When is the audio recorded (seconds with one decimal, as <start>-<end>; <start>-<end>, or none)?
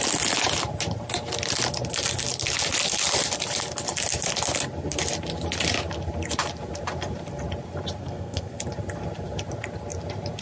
0.0-8.0; 8.6-10.4